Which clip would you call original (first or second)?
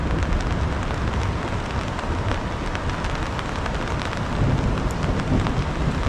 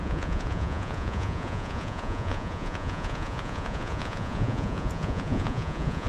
first